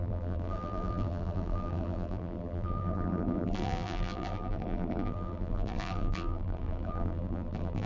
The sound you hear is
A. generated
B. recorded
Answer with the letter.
A